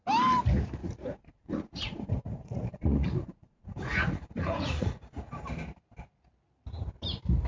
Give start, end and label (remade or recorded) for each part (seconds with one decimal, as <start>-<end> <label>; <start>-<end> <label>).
0.0-0.8 recorded; 0.8-5.3 remade; 5.3-7.5 recorded